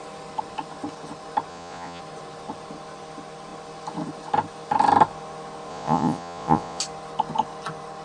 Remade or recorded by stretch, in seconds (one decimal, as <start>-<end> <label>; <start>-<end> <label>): 0.0-1.5 recorded; 1.5-2.0 remade; 2.0-5.7 recorded; 5.7-6.8 remade; 6.8-8.0 recorded